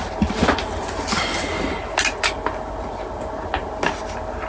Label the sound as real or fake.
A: real